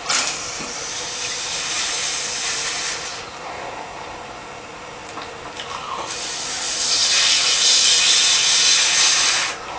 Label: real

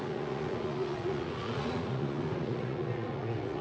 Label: fake